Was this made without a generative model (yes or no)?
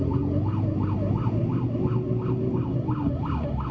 yes